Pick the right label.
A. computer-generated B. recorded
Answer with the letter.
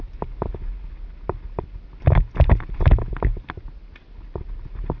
B